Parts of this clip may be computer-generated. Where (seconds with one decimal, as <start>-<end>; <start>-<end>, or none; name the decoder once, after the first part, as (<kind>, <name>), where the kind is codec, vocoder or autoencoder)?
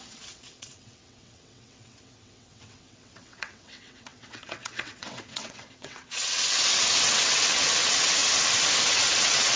0.0-8.2 (vocoder, WaveNeXt); 8.9-9.6